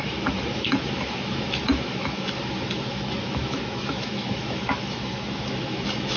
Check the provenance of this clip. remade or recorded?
remade